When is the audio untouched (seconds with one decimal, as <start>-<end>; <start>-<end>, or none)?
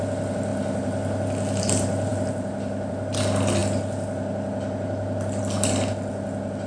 0.0-6.7